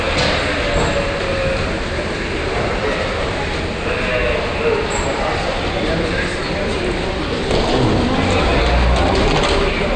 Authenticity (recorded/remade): recorded